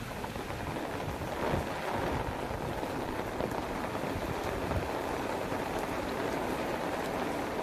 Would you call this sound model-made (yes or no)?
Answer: no